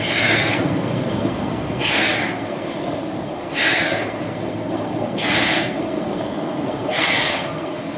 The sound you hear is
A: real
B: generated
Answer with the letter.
B